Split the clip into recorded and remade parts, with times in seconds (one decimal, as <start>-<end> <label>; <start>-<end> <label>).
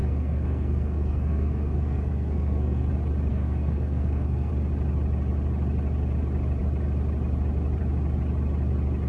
0.0-2.9 remade; 2.9-3.3 recorded; 3.3-4.5 remade; 4.5-9.1 recorded